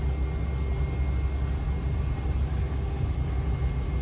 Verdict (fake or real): real